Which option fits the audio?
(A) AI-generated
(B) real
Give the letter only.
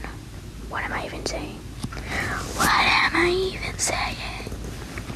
B